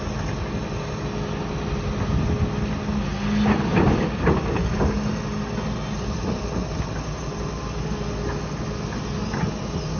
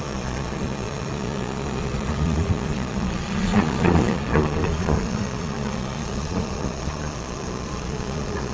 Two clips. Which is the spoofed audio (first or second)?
second